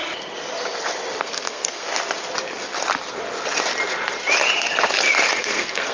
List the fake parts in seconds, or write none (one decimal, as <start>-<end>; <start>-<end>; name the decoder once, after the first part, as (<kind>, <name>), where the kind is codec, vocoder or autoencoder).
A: 1.2-1.9 (codec, SNAC); 5.4-5.9